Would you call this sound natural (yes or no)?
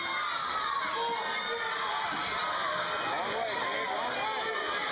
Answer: yes